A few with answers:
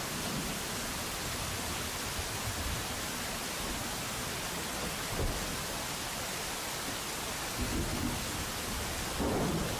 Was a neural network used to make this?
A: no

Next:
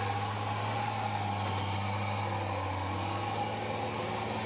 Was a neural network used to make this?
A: no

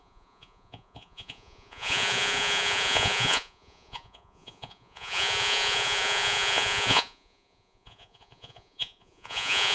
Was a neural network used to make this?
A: yes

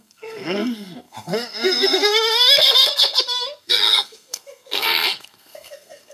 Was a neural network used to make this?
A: yes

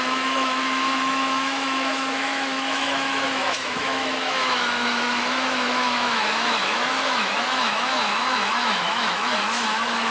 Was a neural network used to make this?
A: yes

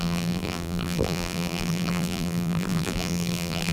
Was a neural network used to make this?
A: yes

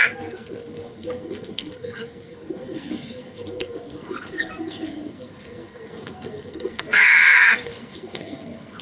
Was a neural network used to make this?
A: yes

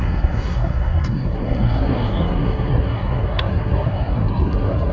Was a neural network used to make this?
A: yes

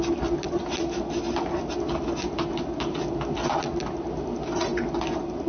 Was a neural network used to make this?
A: no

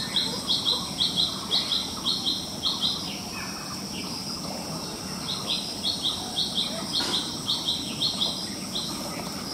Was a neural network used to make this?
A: no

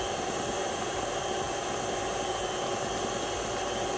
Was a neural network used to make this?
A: no